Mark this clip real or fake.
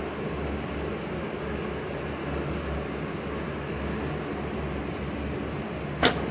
real